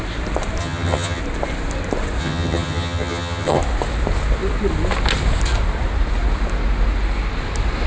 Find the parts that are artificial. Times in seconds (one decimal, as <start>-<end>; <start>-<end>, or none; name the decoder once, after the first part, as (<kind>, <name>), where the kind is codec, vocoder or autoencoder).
0.6-1.2 (vocoder, HiFi-GAN); 2.2-3.6